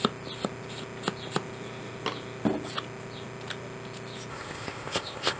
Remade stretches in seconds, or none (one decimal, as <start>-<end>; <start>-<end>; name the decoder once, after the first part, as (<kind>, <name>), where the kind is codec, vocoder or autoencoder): 4.3-5.4 (codec, ZipCodec)